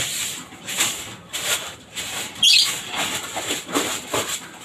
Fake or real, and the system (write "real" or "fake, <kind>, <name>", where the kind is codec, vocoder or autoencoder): fake, vocoder, BigVGAN v2